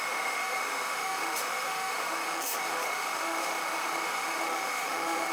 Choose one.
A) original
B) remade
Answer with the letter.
B